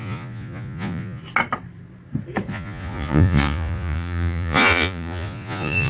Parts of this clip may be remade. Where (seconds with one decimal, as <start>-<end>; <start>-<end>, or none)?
0.0-1.2; 2.5-5.9